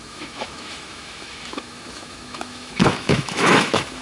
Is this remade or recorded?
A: remade